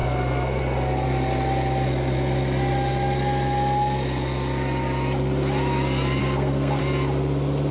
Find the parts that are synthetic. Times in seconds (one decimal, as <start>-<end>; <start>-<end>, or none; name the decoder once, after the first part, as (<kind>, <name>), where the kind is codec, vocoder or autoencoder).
0.0-0.6 (codec, SNAC); 6.2-6.8